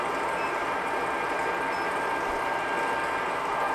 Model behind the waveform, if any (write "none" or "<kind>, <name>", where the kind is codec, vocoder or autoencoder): none